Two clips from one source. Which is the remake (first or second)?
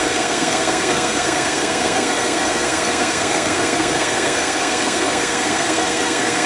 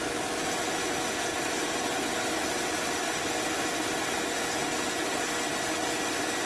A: first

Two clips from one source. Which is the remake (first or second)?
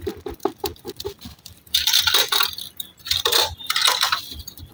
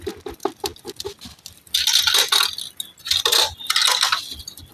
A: first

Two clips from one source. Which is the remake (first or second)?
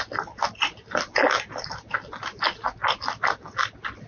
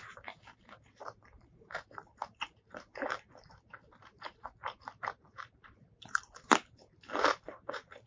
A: second